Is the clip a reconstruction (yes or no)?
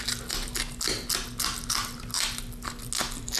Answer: no